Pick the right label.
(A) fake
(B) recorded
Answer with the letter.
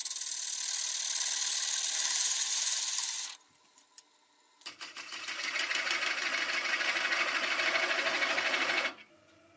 B